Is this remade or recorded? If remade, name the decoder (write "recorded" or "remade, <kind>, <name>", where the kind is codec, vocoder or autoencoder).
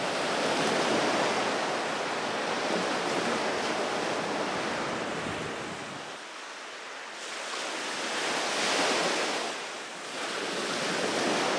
recorded